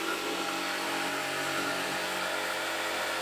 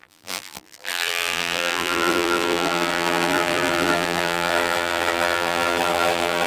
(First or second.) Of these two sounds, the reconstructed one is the second